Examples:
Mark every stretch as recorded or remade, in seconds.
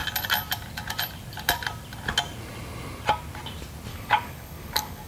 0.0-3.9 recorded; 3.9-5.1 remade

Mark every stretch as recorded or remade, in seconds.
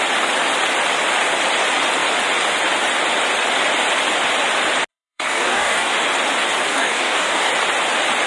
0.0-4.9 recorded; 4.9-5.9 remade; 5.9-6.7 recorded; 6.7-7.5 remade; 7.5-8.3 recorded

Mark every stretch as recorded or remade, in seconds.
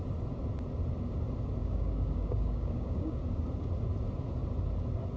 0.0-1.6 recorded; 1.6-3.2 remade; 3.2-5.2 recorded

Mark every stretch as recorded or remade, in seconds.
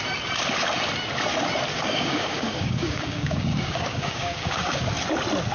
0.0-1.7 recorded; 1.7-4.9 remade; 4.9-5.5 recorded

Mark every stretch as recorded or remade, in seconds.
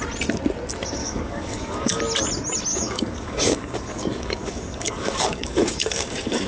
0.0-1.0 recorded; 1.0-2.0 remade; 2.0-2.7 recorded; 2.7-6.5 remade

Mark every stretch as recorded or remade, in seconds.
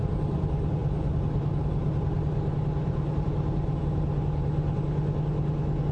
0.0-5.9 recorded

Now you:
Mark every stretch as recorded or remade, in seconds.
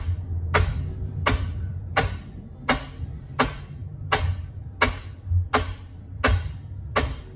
0.0-7.4 recorded